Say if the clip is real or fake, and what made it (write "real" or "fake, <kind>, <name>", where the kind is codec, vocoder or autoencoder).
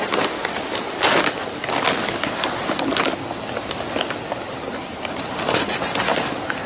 real